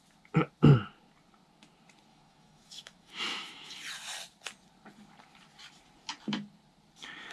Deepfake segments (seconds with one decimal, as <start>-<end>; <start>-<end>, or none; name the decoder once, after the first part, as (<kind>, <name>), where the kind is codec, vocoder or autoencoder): 2.1-3.7 (autoencoder, DAC-VAE)